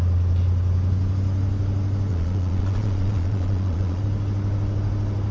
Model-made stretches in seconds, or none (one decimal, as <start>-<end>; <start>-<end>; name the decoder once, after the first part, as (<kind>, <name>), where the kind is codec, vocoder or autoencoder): 2.1-4.0 (vocoder, Vocos)